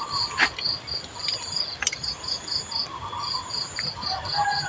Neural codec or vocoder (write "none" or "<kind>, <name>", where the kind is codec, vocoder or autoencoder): none